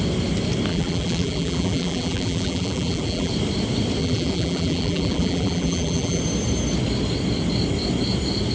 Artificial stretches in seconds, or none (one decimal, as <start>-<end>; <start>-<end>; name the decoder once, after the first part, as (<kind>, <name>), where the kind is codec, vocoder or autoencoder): 0.7-3.3 (vocoder, BigVGAN v2); 4.0-6.2